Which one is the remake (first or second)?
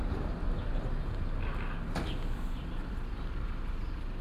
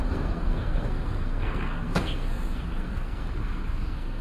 second